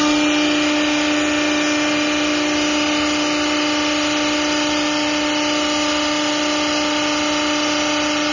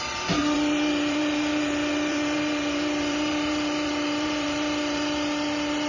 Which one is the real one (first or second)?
first